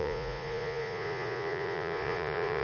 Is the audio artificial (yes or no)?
yes